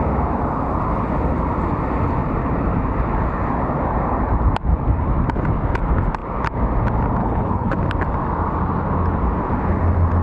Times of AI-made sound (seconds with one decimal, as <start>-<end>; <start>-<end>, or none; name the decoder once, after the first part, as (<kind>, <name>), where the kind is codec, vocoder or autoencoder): 7.2-7.7 (codec, HILCodec)